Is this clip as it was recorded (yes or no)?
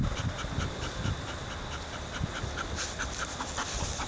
yes